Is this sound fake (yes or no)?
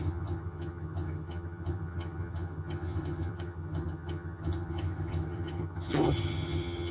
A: yes